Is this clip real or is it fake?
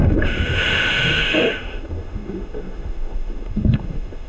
fake